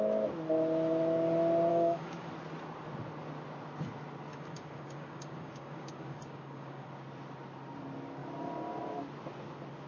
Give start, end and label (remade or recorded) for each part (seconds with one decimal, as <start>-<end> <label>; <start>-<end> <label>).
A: 0.0-1.7 recorded; 1.7-2.3 remade; 2.3-4.3 recorded; 4.3-6.9 remade; 6.9-9.9 recorded